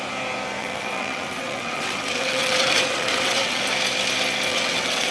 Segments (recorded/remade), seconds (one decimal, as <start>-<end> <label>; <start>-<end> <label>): 0.0-0.6 recorded; 0.6-3.6 remade; 3.6-4.5 recorded; 4.5-5.1 remade